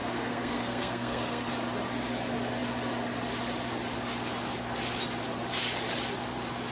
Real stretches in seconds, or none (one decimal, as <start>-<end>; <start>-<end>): 1.5-6.7